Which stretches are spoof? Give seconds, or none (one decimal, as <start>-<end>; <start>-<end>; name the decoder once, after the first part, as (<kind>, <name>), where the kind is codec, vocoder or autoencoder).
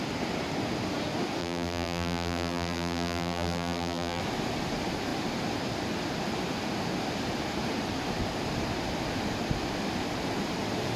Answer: 1.4-4.2 (vocoder, BigVGAN v2)